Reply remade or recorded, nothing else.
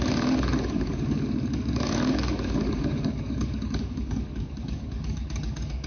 remade